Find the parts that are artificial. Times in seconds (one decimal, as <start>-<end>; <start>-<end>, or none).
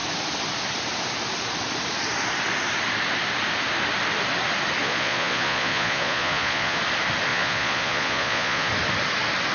4.8-6.8; 7.3-8.7